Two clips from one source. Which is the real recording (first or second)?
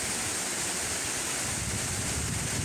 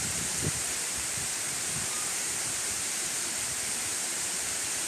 first